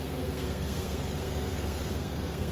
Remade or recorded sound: remade